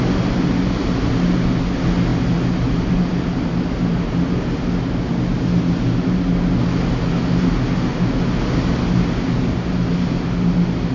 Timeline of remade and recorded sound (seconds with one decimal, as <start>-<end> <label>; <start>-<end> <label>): 0.0-10.9 recorded